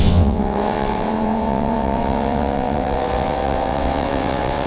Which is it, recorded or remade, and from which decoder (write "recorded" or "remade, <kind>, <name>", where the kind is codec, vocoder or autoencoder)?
remade, vocoder, WaveNeXt